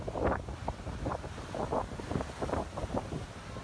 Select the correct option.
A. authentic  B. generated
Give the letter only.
A